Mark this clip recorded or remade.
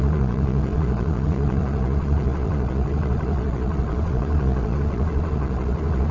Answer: remade